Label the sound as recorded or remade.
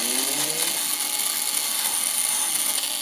recorded